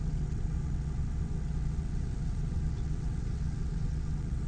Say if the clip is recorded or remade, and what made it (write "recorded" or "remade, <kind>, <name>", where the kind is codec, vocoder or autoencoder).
remade, vocoder, WaveNeXt